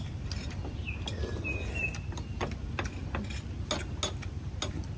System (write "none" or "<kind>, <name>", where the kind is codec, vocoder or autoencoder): none